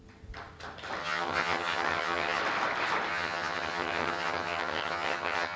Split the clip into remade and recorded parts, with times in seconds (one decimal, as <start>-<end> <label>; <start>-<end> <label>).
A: 0.0-1.0 recorded; 1.0-2.4 remade; 2.4-3.1 recorded; 3.1-5.6 remade